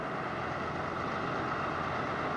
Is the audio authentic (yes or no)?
yes